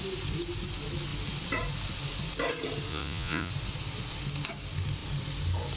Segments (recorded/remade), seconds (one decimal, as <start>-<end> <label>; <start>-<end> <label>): 0.0-2.9 recorded; 2.9-3.5 remade; 3.5-5.8 recorded